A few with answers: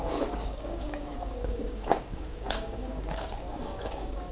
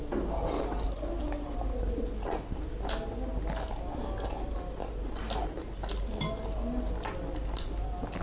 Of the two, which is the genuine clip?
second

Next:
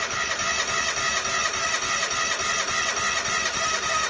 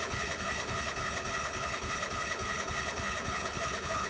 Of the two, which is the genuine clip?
first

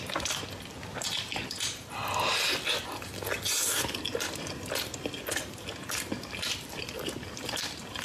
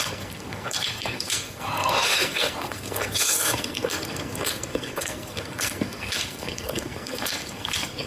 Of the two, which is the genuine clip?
first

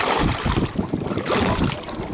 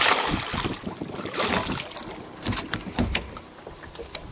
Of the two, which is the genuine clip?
second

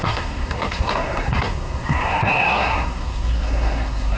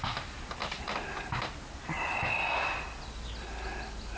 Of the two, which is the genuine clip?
second